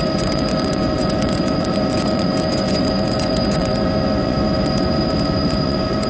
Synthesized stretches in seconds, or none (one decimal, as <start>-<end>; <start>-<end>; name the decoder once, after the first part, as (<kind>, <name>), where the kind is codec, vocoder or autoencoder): 0.0-6.1 (vocoder, Vocos)